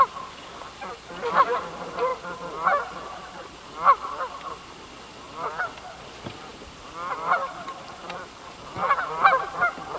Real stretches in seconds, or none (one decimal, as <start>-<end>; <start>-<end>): 0.0-10.0